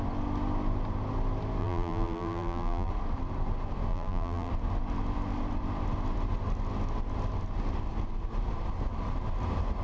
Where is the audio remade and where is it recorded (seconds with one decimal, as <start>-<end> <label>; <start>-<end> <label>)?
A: 0.0-1.6 recorded; 1.6-2.9 remade; 2.9-3.9 recorded; 3.9-4.5 remade; 4.5-9.8 recorded